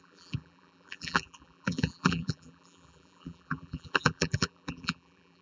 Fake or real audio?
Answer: fake